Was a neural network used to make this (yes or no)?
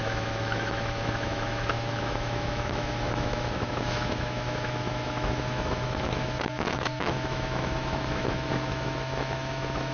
yes